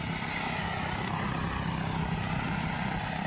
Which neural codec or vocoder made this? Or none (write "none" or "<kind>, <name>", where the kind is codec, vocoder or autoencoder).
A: none